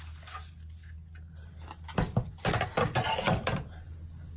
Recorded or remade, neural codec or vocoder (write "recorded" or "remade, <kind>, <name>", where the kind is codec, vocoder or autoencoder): recorded